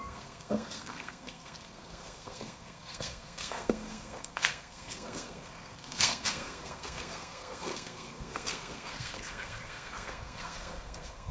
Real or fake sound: fake